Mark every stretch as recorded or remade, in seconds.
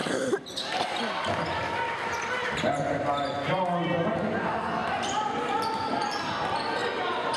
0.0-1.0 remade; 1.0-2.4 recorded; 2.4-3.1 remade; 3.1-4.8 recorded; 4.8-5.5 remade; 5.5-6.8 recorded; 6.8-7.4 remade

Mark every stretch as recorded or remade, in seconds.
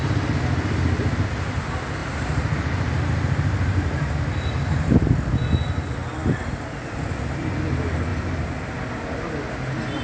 0.0-2.0 recorded; 2.0-5.1 remade; 5.1-8.1 recorded; 8.1-8.8 remade; 8.8-10.0 recorded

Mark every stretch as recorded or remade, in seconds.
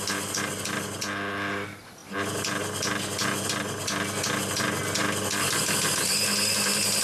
0.0-7.0 recorded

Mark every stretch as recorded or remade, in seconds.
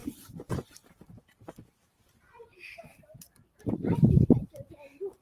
0.0-2.9 remade; 2.9-4.1 recorded; 4.1-5.2 remade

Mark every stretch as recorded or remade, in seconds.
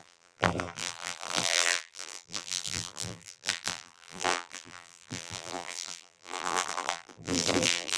0.0-8.0 remade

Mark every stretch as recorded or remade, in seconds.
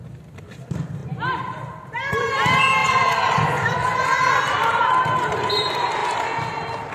0.0-1.0 recorded; 1.0-1.6 remade; 1.6-2.8 recorded; 2.8-4.0 remade; 4.0-6.9 recorded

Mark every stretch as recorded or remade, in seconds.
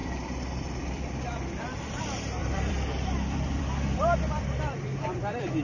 0.0-2.0 remade; 2.0-2.4 recorded; 2.4-5.6 remade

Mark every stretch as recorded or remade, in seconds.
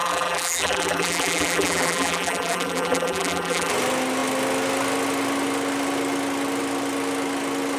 0.0-3.7 remade; 3.7-7.8 recorded